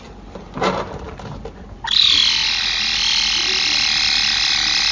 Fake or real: real